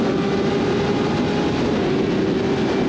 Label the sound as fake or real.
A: real